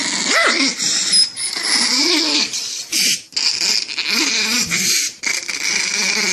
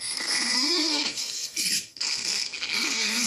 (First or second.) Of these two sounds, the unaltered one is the first